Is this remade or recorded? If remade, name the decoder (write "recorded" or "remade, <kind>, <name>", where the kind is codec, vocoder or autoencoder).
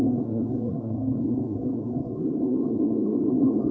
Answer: remade, codec, SNAC